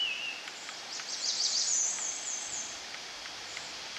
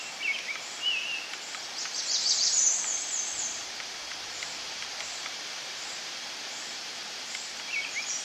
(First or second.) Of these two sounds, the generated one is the second